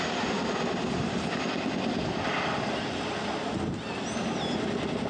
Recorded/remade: recorded